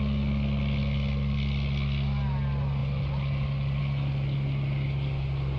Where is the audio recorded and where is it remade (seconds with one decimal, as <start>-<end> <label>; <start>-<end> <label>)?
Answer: 0.0-5.6 recorded